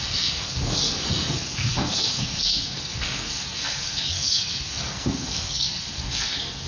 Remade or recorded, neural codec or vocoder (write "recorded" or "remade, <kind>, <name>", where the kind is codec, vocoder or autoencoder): remade, codec, SNAC